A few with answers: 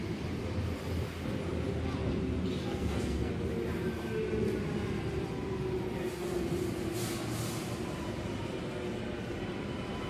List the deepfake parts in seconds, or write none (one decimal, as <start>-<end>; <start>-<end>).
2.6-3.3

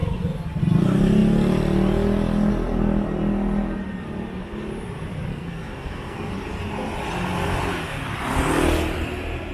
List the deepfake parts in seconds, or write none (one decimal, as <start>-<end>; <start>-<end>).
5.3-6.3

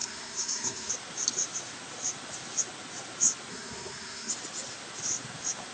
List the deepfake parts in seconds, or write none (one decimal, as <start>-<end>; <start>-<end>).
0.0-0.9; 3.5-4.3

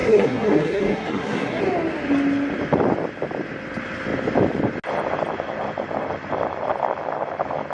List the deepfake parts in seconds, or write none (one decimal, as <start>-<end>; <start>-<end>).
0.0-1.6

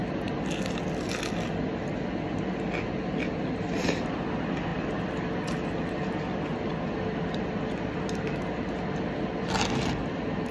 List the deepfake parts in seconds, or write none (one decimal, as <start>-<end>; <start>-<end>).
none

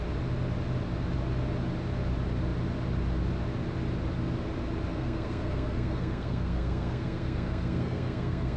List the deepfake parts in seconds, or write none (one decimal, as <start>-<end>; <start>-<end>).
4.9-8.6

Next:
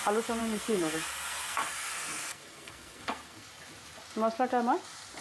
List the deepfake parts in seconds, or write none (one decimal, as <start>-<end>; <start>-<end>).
0.4-3.5

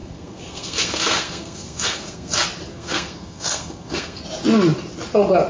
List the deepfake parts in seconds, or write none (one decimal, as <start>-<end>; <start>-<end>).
0.0-2.3; 2.7-4.2